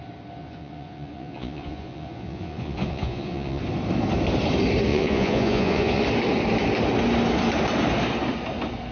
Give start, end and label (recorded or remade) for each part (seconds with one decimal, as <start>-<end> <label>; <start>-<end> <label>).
0.0-0.4 recorded; 0.4-3.6 remade; 3.6-4.9 recorded; 4.9-6.0 remade; 6.0-8.9 recorded